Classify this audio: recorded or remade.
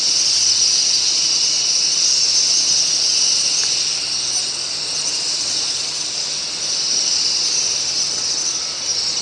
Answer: recorded